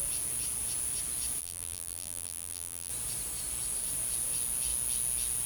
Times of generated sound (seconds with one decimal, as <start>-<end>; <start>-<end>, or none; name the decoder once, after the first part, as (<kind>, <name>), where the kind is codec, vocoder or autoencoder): 1.4-2.9 (vocoder, BigVGAN v2)